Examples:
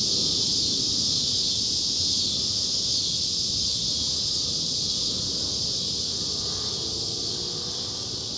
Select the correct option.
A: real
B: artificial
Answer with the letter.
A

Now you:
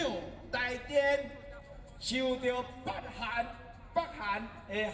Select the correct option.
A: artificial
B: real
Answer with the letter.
B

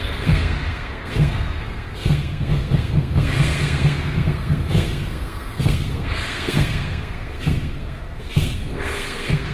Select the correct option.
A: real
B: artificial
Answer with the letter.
B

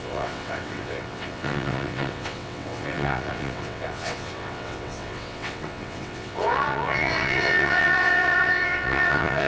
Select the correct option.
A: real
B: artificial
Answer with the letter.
B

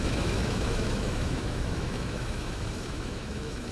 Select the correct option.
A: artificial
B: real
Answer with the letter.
A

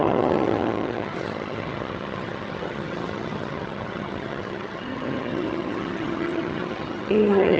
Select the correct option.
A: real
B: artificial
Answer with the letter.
B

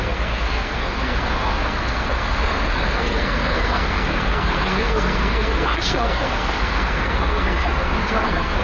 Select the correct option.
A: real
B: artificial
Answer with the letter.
B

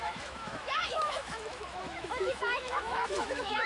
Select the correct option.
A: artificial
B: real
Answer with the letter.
A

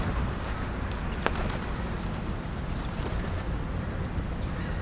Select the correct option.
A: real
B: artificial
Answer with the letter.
A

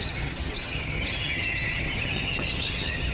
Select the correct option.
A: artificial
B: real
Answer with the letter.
A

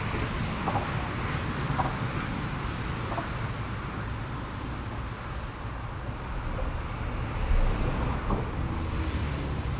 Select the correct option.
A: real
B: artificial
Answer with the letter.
A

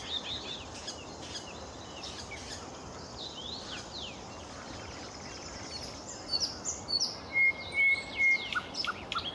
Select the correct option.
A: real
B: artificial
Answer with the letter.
A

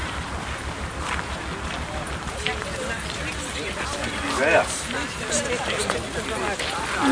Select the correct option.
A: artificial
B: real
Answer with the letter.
B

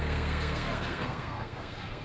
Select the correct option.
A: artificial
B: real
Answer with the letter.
A